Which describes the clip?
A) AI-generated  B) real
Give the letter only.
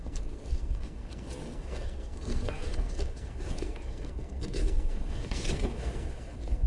A